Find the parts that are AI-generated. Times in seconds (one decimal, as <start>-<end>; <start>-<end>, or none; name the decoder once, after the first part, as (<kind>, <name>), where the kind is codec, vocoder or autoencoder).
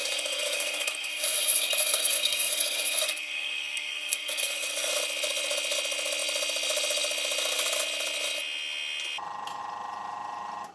0.0-4.9 (codec, SNAC)